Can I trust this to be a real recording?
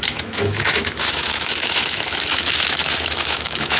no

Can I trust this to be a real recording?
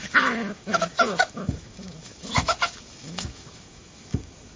no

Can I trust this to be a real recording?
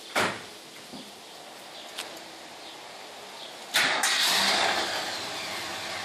yes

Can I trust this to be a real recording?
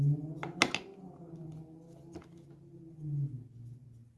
yes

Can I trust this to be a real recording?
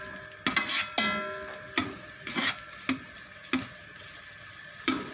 yes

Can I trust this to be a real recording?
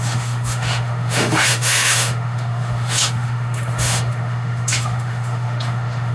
no